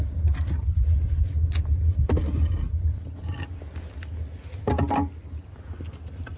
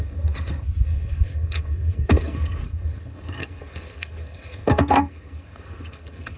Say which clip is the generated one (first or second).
second